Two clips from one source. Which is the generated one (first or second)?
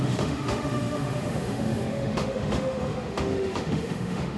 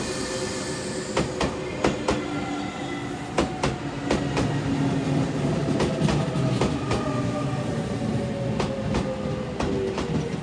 first